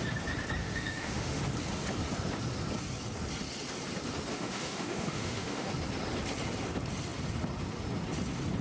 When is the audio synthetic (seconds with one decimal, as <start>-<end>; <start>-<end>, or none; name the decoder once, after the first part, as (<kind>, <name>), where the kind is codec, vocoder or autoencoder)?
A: 0.6-1.4 (autoencoder, DAC-VAE); 4.3-5.7